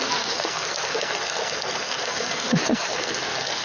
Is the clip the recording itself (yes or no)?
no